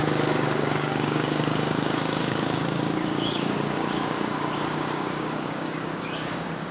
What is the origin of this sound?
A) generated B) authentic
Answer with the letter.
A